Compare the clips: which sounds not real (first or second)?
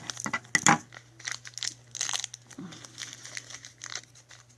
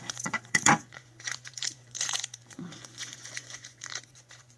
second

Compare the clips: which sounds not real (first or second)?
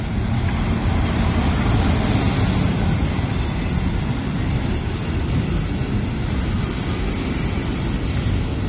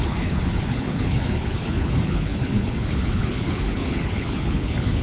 second